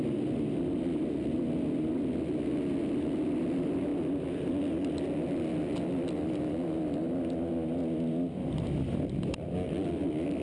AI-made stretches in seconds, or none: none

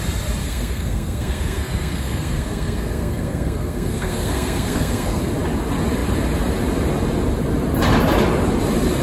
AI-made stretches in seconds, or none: 0.4-5.2 (codec, SNAC)

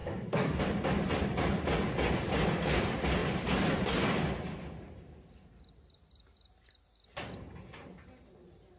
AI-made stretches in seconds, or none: 0.0-0.6 (codec, SNAC)

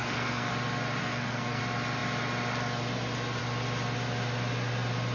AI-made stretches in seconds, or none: 0.0-0.5 (codec, SNAC); 1.0-1.6

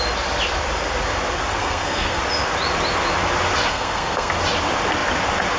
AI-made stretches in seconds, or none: 1.6-2.2 (codec, SNAC); 3.7-4.3

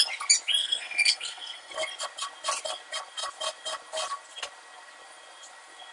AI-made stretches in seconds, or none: 0.6-1.7 (codec, SNAC)